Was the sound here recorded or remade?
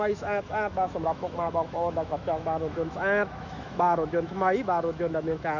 remade